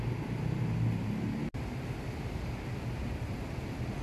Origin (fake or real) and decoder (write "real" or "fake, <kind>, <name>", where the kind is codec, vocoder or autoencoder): real